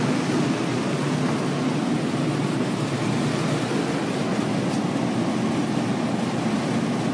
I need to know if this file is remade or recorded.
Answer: recorded